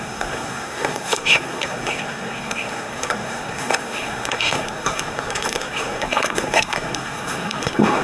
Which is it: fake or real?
fake